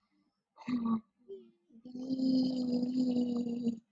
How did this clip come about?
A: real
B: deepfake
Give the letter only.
A